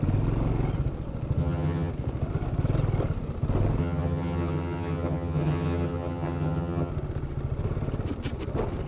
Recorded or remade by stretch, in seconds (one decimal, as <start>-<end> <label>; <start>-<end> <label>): 0.0-1.4 recorded; 1.4-1.9 remade; 1.9-3.8 recorded; 3.8-6.9 remade; 6.9-8.9 recorded

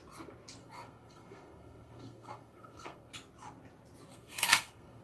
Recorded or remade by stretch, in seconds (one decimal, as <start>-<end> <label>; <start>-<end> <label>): 0.0-0.6 recorded; 0.6-3.1 remade; 3.1-4.1 recorded; 4.1-5.0 remade

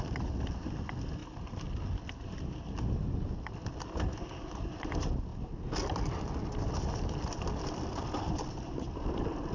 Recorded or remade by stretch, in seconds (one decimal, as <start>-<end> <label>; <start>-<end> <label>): 0.0-1.2 remade; 1.2-4.8 recorded; 4.8-5.3 remade; 5.3-7.7 recorded; 7.7-9.5 remade

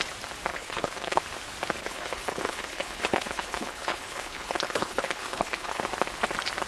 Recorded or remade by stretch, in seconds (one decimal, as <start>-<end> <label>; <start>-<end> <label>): 0.0-0.5 recorded; 0.5-1.2 remade; 1.2-1.8 recorded; 1.8-5.8 remade; 5.8-6.7 recorded

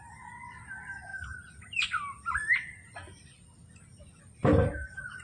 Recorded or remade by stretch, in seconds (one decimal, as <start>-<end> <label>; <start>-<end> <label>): 0.0-5.2 recorded